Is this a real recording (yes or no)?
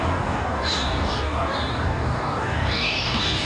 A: no